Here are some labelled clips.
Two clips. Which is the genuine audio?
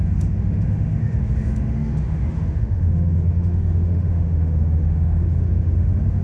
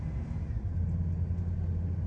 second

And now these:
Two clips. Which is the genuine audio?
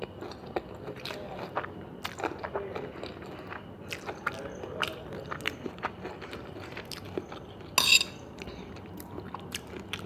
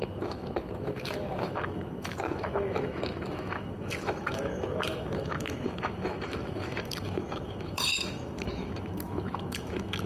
first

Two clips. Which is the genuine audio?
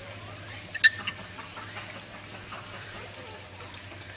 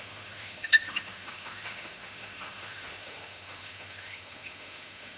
first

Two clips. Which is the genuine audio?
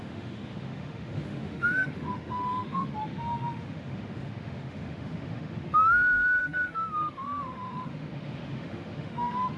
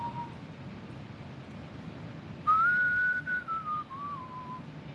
second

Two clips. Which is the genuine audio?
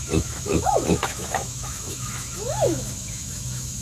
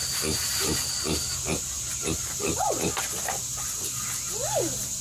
second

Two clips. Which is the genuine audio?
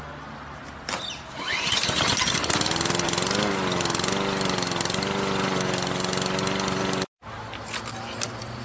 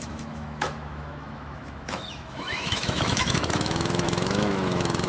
first